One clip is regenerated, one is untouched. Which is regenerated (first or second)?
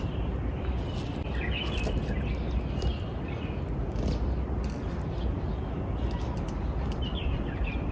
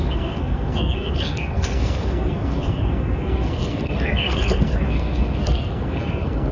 second